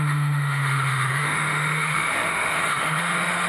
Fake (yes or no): yes